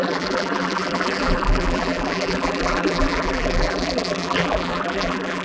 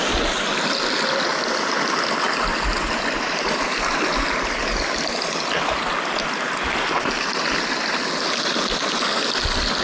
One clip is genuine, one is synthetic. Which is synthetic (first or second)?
first